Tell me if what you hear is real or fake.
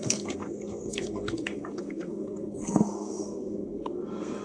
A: fake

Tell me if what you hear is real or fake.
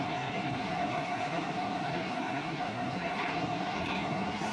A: fake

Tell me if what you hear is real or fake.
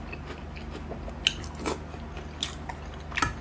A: real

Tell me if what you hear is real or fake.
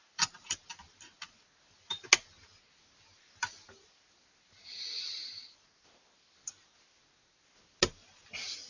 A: real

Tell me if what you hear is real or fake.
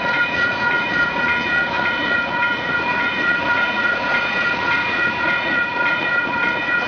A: fake